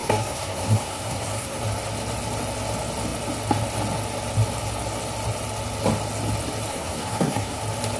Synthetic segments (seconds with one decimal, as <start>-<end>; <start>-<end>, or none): 0.0-1.6; 6.7-7.6